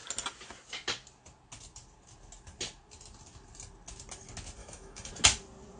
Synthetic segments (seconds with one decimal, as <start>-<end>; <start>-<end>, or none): 4.6-5.1